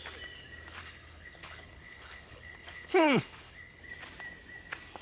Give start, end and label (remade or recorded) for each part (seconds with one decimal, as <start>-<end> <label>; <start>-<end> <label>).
0.0-0.8 recorded; 0.8-3.8 remade; 3.8-5.0 recorded